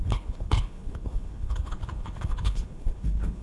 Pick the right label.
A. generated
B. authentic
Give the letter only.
A